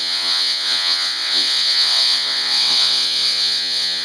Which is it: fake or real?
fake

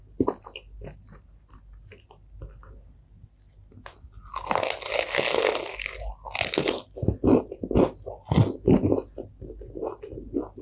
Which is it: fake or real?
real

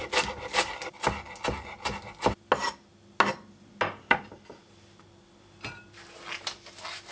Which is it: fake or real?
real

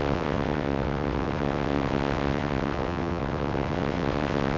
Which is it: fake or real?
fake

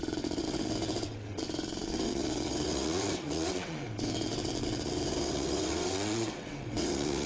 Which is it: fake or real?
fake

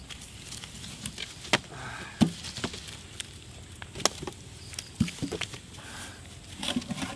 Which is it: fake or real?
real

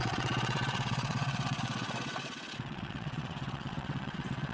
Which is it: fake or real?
fake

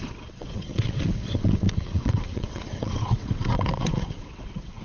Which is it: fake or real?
fake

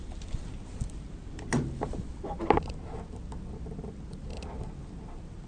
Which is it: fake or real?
real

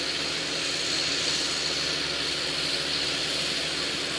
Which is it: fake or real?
real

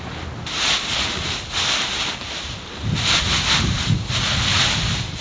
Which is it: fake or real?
real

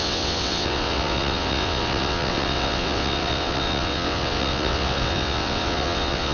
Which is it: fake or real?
fake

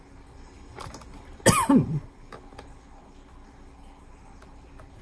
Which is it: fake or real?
real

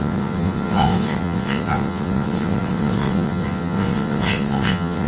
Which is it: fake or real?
fake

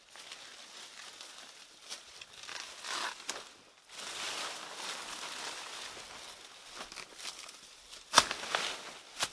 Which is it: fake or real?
real